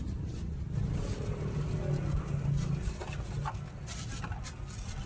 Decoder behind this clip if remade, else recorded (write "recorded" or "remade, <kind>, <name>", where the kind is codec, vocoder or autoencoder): recorded